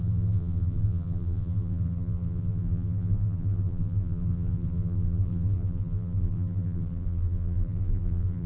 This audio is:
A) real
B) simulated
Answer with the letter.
B